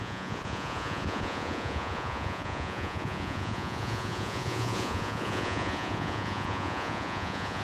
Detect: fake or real fake